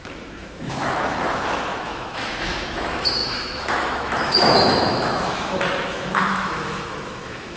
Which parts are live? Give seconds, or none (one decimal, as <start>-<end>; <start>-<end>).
none